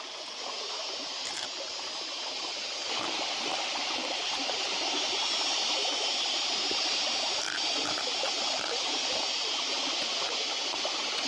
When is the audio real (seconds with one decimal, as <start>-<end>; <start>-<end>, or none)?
0.0-11.3